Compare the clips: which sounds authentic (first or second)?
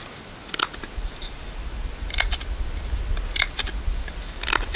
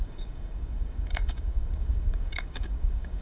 first